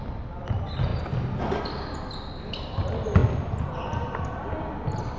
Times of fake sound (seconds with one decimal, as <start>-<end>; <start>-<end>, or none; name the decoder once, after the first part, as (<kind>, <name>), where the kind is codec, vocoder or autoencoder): none